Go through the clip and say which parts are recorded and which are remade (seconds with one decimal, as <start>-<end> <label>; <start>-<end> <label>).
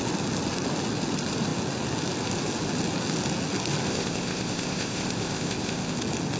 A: 0.0-3.8 recorded; 3.8-6.0 remade; 6.0-6.4 recorded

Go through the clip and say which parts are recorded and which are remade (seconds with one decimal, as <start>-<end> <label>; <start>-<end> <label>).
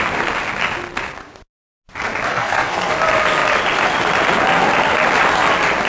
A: 0.0-2.3 recorded; 2.3-2.9 remade; 2.9-5.9 recorded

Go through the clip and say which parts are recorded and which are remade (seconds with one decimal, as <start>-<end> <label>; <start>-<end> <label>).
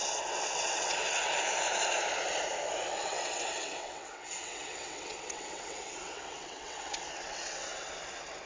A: 0.0-1.3 remade; 1.3-3.0 recorded; 3.0-7.9 remade; 7.9-8.5 recorded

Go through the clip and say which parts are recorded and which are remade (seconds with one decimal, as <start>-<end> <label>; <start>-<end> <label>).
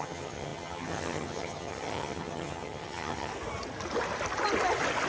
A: 0.0-3.3 remade; 3.3-5.1 recorded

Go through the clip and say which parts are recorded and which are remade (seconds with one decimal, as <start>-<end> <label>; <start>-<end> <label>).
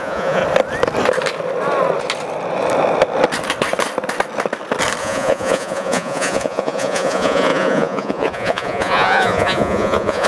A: 0.0-0.4 remade; 0.4-5.0 recorded; 5.0-10.3 remade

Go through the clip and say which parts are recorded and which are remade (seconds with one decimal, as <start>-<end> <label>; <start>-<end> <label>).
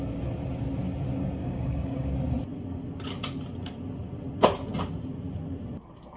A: 0.0-1.4 recorded; 1.4-2.1 remade; 2.1-6.2 recorded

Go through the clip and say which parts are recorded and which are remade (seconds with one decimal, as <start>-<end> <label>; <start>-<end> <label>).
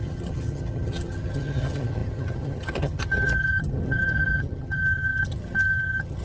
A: 0.0-6.2 remade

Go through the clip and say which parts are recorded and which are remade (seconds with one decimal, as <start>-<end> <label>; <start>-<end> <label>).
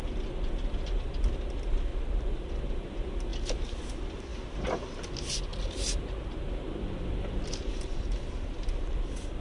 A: 0.0-1.9 recorded; 1.9-2.5 remade; 2.5-4.3 recorded; 4.3-5.1 remade; 5.1-5.5 recorded; 5.5-9.0 remade; 9.0-9.4 recorded